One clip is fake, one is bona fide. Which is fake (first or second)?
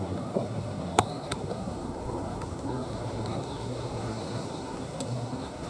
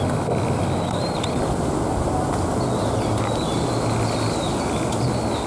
first